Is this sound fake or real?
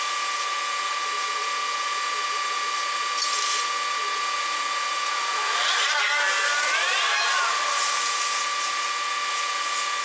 real